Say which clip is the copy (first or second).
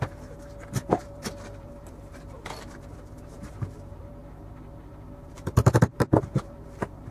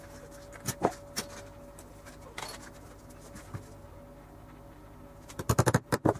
first